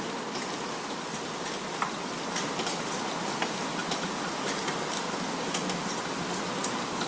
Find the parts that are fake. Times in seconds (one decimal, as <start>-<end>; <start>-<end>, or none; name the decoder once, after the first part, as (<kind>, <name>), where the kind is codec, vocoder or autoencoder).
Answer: 3.8-4.3 (vocoder, BigVGAN v2)